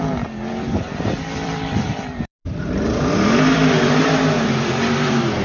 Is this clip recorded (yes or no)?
no